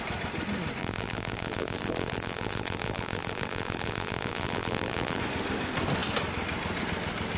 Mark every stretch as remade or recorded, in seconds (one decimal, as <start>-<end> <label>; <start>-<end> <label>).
0.0-0.8 recorded; 0.8-5.2 remade; 5.2-7.4 recorded